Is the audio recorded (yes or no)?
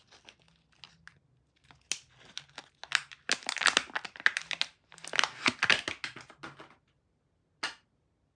yes